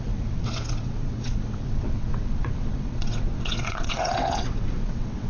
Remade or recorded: remade